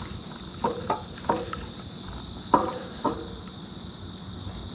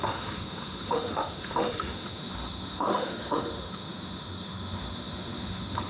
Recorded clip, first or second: first